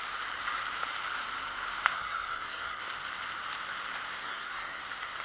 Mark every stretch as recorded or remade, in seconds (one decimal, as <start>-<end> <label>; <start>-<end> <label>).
0.0-1.9 recorded; 1.9-2.8 remade; 2.8-4.2 recorded; 4.2-4.8 remade; 4.8-5.2 recorded